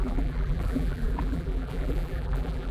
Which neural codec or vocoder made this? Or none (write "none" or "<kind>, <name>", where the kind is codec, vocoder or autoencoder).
vocoder, BigVGAN v2